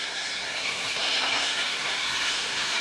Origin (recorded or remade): remade